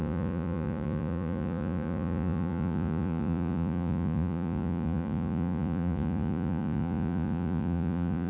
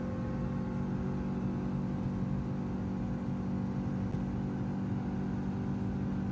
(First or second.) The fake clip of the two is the first